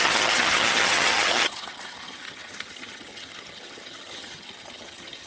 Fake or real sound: fake